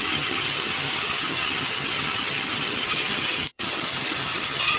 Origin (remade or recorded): remade